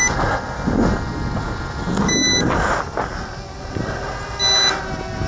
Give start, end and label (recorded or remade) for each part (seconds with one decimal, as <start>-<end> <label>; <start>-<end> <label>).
0.0-5.3 recorded